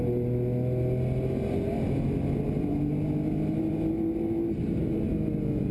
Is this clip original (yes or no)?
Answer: yes